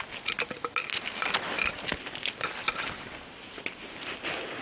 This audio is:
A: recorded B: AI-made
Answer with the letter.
A